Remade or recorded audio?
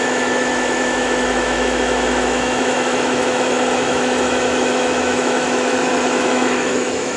remade